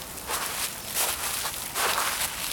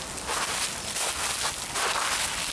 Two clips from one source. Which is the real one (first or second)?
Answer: second